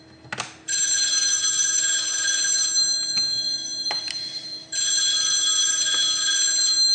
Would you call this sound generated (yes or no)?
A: no